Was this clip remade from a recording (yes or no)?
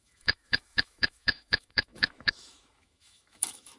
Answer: yes